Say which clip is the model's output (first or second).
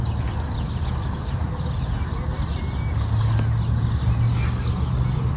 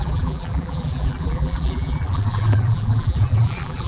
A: second